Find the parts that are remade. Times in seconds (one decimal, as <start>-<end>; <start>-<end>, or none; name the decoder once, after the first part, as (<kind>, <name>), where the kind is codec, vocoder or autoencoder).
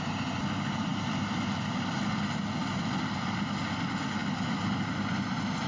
none